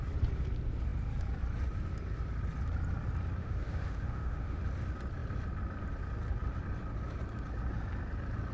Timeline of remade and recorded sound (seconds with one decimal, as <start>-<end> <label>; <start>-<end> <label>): 0.0-3.4 recorded; 3.4-4.6 remade; 4.6-8.5 recorded